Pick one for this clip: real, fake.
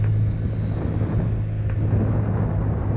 real